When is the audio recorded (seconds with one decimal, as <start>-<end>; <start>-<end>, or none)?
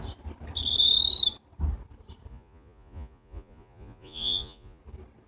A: 0.0-2.3; 4.8-5.3